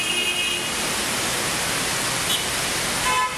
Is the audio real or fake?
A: real